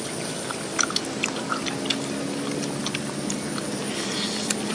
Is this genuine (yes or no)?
yes